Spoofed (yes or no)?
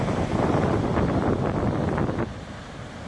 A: yes